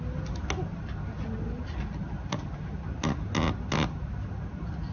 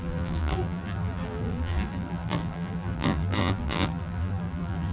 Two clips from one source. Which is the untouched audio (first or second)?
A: first